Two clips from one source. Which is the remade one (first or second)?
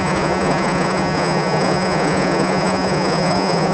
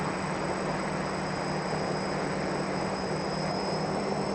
first